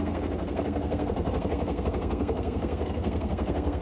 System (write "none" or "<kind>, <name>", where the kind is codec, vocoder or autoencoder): codec, SNAC